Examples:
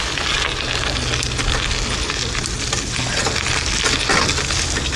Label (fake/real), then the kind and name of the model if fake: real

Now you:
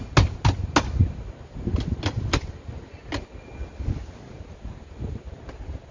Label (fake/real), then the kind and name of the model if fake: real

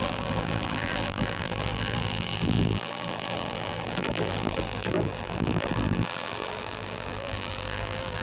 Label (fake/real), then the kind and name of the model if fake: fake, vocoder, BigVGAN v2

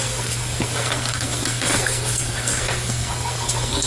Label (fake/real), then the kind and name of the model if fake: fake, codec, SNAC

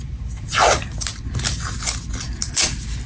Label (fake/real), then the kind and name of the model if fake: real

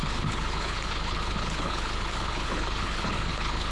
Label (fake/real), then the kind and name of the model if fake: fake, codec, HILCodec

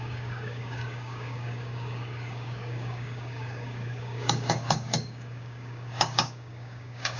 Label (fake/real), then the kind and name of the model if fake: fake, codec, DAC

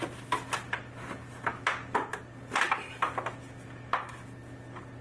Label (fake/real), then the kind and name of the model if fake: real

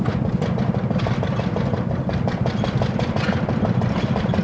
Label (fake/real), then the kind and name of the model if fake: real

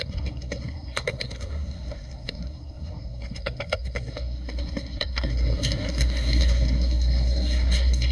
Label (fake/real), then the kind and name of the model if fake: fake, codec, SNAC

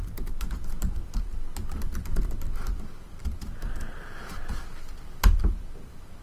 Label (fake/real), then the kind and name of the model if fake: real